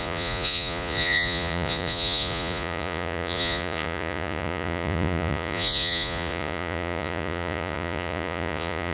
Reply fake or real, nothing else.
fake